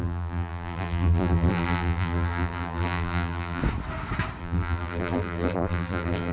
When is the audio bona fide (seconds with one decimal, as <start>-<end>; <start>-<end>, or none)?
3.6-4.4